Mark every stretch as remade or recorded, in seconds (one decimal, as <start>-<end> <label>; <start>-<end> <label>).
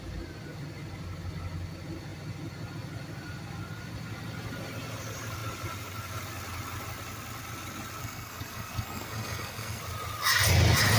0.0-8.0 recorded; 8.0-9.8 remade; 9.8-11.0 recorded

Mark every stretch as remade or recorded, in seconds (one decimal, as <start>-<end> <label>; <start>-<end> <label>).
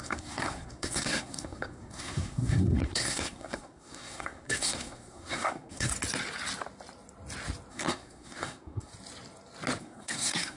0.0-5.9 remade; 5.9-7.7 recorded; 7.7-8.9 remade; 8.9-9.8 recorded; 9.8-10.6 remade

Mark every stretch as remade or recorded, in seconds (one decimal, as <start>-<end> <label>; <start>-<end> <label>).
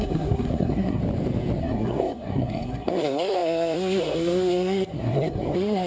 0.0-1.0 remade; 1.0-1.6 recorded; 1.6-5.9 remade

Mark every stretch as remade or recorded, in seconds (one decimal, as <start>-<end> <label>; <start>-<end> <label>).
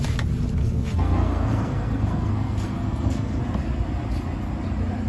0.0-0.6 recorded; 0.6-3.4 remade; 3.4-5.1 recorded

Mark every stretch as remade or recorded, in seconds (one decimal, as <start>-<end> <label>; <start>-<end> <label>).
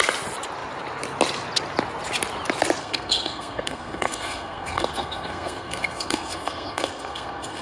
0.0-2.8 recorded; 2.8-7.6 remade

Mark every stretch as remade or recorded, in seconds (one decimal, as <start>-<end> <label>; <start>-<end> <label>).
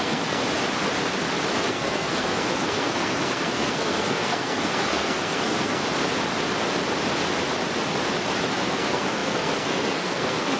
0.0-0.4 remade; 0.4-1.7 recorded; 1.7-5.8 remade; 5.8-8.5 recorded; 8.5-10.6 remade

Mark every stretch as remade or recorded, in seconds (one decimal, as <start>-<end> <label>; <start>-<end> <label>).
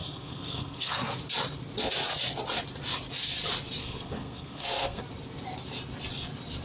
0.0-1.2 remade; 1.2-3.8 recorded; 3.8-5.0 remade; 5.0-6.6 recorded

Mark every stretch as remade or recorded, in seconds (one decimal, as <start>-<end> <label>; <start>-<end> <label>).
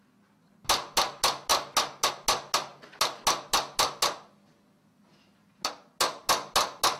0.0-7.0 recorded